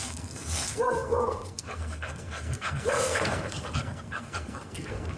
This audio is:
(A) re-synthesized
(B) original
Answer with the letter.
A